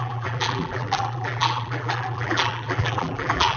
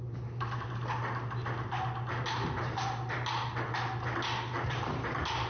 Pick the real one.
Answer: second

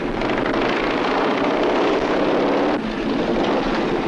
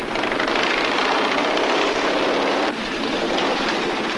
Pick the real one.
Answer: first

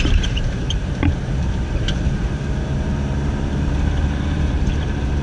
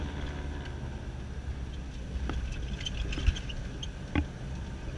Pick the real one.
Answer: second